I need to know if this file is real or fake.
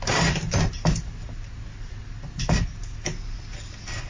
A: real